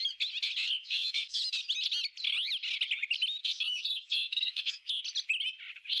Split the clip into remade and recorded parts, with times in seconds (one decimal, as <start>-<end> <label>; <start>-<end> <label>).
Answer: 0.0-0.8 recorded; 0.8-1.4 remade; 1.4-3.4 recorded; 3.4-5.0 remade; 5.0-6.0 recorded